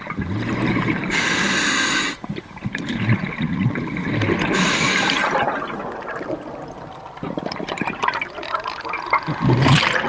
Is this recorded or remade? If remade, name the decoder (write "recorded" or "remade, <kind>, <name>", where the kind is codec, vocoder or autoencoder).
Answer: recorded